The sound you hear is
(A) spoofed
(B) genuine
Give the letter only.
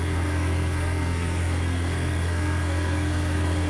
A